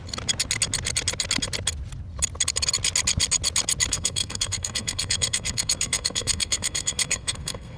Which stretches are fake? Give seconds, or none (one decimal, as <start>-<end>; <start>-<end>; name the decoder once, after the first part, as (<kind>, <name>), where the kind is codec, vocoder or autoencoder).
3.9-7.8 (codec, SNAC)